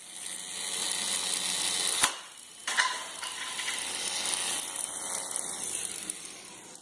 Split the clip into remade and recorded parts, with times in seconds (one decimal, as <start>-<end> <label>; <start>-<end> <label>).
0.0-6.8 recorded